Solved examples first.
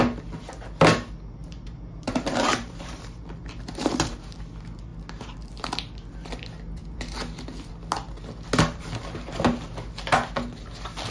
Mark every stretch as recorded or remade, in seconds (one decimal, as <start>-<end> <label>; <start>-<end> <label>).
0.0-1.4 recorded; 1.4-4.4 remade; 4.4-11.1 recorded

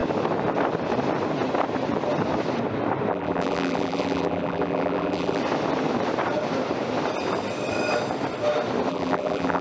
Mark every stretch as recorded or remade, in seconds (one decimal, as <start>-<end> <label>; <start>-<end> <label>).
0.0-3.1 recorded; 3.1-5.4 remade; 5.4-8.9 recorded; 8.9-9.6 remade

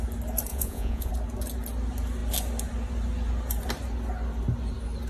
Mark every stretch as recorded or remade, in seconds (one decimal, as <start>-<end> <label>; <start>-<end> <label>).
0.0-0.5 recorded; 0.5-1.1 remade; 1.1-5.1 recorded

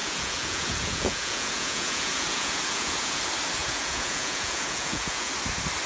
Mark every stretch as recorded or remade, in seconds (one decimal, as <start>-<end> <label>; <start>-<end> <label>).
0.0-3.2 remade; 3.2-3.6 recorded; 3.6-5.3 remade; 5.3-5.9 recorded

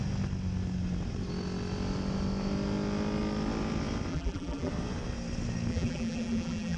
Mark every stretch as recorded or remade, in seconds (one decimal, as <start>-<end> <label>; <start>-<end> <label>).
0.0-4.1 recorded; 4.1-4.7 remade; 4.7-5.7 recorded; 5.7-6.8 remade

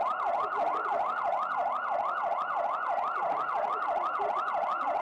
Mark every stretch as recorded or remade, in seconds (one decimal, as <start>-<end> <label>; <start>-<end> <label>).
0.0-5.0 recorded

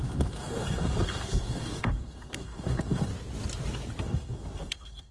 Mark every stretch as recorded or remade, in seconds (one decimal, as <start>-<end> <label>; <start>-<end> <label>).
0.0-3.1 remade; 3.1-4.0 recorded; 4.0-5.1 remade